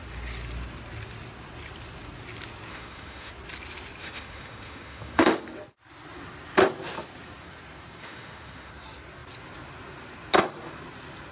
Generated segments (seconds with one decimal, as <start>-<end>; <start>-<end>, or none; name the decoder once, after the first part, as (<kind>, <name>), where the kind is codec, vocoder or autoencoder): 2.7-3.3 (autoencoder, DAC-VAE); 4.0-5.4; 8.0-8.7